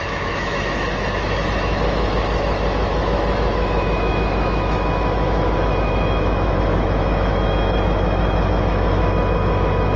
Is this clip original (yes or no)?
no